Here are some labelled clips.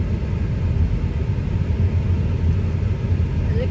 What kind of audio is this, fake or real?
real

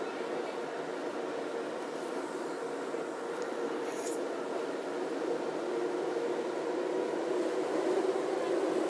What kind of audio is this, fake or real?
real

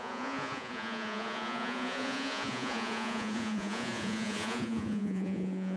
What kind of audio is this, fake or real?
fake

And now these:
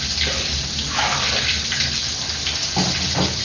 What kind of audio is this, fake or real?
real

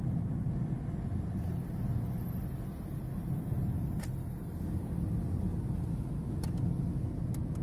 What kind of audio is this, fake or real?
real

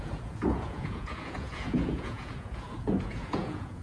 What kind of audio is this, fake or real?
fake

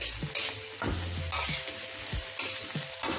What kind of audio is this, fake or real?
real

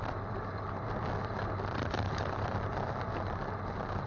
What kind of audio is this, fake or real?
real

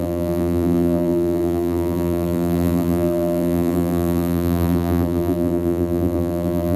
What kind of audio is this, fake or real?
fake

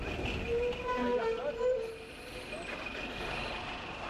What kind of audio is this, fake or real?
real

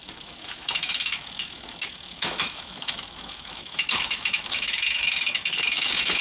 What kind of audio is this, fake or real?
fake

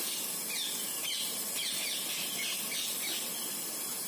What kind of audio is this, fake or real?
real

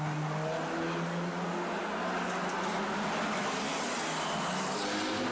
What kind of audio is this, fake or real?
real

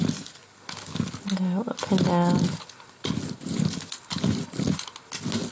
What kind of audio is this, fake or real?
real